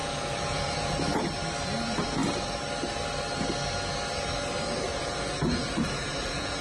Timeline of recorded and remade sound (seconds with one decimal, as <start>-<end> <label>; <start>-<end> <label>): 0.0-1.0 remade; 1.0-4.9 recorded; 4.9-6.6 remade